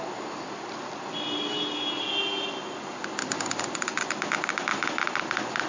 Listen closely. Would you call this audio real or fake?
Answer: real